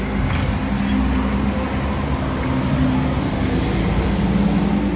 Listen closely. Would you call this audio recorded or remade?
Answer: recorded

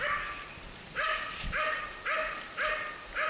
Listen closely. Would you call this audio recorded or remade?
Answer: recorded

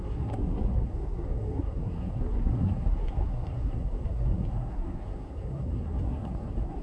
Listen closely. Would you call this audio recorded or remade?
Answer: remade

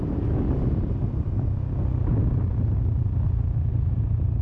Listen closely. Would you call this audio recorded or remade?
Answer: recorded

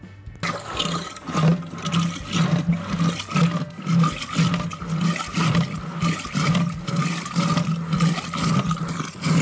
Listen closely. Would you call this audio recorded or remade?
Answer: recorded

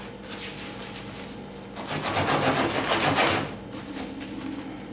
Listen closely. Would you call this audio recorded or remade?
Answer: recorded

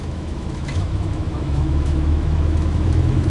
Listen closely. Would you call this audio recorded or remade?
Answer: remade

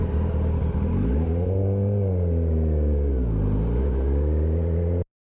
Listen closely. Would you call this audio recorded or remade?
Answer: recorded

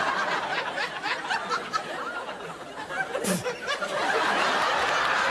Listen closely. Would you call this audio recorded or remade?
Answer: recorded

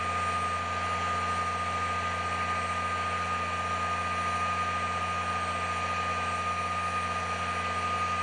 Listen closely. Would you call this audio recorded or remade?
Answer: recorded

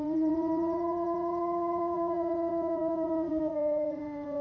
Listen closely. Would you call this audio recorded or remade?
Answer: remade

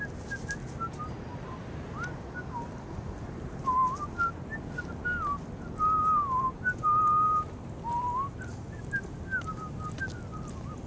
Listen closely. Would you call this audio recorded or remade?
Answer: recorded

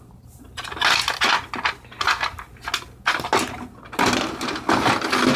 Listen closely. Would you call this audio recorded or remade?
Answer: recorded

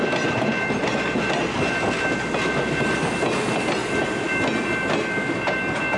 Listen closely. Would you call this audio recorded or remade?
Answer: recorded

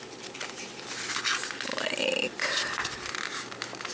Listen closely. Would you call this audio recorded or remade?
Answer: recorded